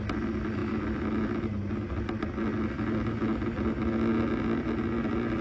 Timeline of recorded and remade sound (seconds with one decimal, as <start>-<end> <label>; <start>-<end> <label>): 0.0-5.4 recorded